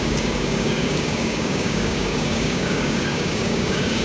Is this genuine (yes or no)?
no